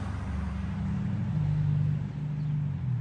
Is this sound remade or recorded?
recorded